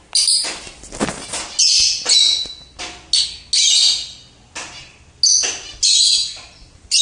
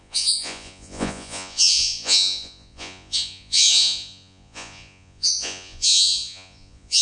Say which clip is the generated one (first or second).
second